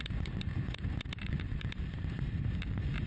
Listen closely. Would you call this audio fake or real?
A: fake